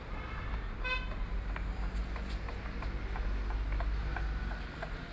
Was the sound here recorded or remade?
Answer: recorded